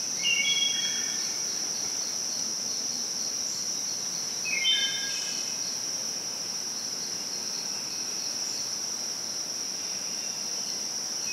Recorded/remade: remade